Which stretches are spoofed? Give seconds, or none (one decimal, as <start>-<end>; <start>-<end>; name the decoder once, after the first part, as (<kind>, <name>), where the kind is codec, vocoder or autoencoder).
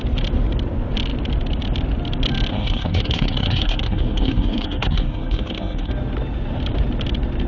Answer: 2.5-5.9 (codec, SNAC)